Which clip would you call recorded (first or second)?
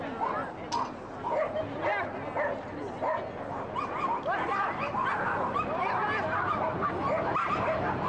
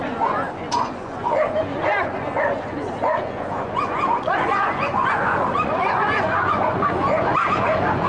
first